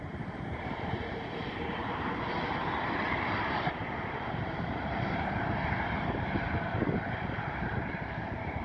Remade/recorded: remade